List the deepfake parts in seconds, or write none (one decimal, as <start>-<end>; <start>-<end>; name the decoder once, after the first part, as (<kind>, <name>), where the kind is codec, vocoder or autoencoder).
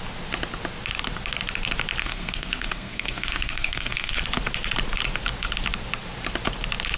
2.0-4.2 (codec, SNAC)